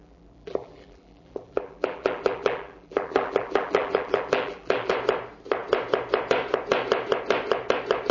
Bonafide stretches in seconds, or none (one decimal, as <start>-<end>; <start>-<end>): 4.9-8.1

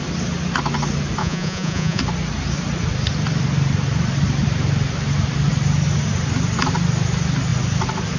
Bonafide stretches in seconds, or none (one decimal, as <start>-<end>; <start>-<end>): 0.0-1.2; 2.0-8.2

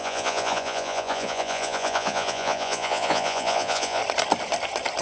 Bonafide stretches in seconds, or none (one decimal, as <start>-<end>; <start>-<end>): 4.0-5.0

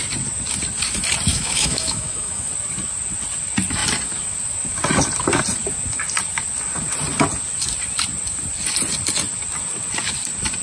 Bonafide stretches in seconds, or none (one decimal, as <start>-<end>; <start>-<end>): 0.0-1.3; 2.5-10.6